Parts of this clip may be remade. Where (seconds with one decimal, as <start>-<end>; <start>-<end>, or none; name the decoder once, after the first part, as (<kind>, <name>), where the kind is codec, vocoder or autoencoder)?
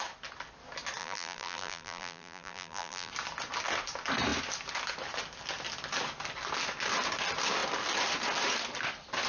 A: 1.0-3.1 (vocoder, BigVGAN v2)